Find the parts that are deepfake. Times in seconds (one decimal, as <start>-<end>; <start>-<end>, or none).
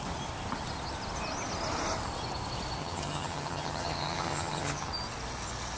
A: 2.8-4.9